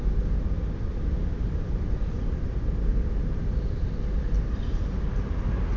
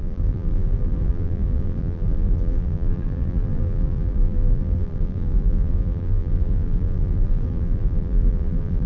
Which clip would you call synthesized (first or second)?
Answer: second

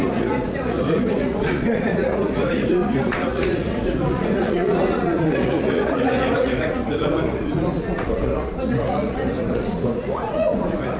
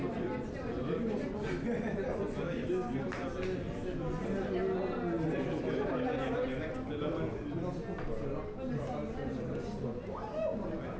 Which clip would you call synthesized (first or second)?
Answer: first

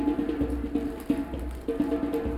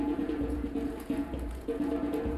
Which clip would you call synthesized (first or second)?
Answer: second